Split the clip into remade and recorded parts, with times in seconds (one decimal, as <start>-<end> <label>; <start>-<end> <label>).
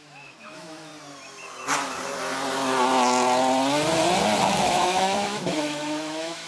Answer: 0.0-0.9 remade; 0.9-4.6 recorded; 4.6-6.5 remade